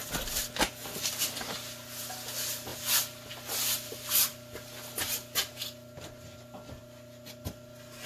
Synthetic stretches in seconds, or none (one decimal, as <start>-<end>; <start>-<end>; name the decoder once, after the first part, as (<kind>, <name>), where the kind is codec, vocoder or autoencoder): none

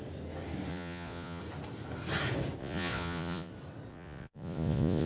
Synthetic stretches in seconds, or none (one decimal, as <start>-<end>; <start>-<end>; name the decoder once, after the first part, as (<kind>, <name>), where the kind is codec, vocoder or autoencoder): 0.7-1.4 (vocoder, Vocos); 2.6-3.5; 3.9-5.1